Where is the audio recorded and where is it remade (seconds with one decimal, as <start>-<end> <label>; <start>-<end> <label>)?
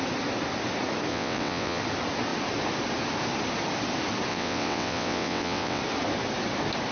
0.0-1.1 recorded; 1.1-1.8 remade; 1.8-4.3 recorded; 4.3-5.8 remade; 5.8-6.9 recorded